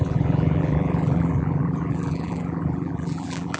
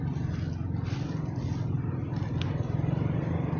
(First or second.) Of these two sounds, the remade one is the first